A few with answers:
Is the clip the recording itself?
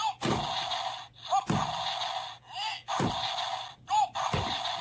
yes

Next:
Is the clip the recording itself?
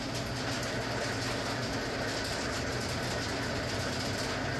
yes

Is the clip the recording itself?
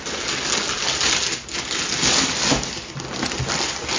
yes